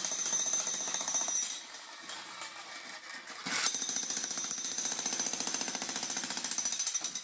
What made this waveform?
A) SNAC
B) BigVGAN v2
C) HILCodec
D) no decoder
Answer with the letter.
D